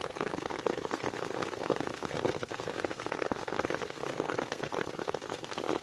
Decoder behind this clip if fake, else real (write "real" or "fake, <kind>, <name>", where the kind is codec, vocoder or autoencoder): fake, codec, SNAC